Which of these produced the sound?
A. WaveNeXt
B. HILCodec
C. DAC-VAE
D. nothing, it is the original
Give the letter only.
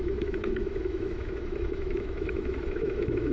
C